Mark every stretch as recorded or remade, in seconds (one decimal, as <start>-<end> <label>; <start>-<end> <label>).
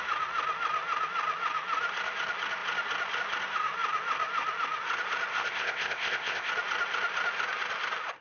0.0-5.3 recorded; 5.3-6.5 remade; 6.5-8.2 recorded